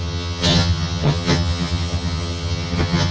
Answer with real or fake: fake